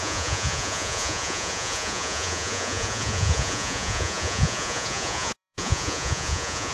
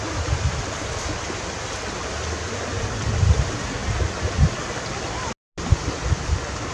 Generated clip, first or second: first